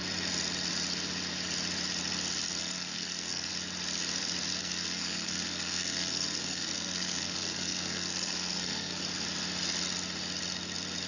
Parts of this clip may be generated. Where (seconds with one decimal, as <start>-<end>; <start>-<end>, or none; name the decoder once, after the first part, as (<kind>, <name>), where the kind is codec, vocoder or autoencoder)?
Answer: 2.6-3.5 (codec, SNAC); 4.6-9.0